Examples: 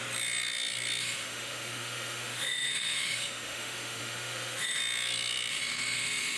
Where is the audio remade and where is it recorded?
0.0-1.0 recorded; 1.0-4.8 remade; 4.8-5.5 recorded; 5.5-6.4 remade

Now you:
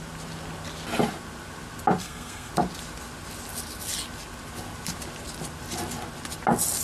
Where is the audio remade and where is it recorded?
0.0-2.0 recorded; 2.0-2.5 remade; 2.5-6.8 recorded